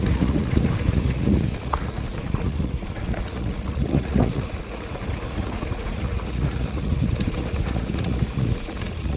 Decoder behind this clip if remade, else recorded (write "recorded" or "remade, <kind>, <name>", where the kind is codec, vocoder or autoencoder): remade, vocoder, Vocos